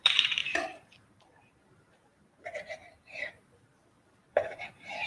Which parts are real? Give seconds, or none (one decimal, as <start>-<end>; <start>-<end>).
none